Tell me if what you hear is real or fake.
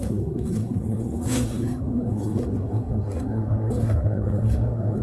fake